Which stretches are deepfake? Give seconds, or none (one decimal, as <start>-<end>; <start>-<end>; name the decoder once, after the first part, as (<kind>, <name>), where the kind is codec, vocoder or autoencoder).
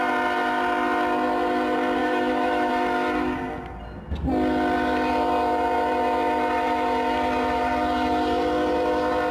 2.0-2.7 (autoencoder, DAC-VAE)